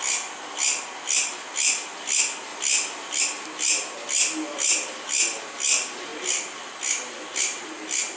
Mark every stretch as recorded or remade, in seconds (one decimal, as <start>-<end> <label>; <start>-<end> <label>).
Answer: 0.0-8.2 recorded